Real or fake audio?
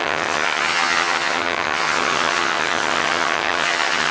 fake